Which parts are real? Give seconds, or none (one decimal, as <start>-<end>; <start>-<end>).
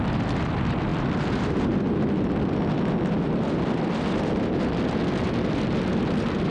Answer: 0.0-6.5